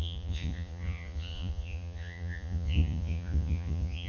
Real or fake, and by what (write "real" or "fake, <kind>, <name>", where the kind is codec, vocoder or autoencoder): fake, vocoder, Vocos